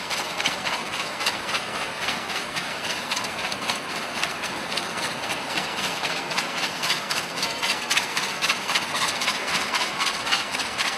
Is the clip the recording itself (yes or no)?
no